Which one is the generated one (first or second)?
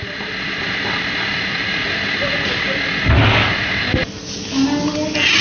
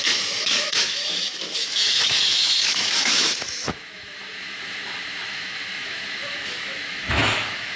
second